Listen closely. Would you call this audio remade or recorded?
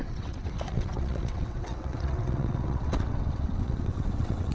remade